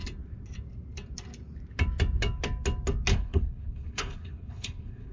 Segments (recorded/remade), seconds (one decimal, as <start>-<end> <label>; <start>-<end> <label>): 0.0-3.1 recorded; 3.1-5.1 remade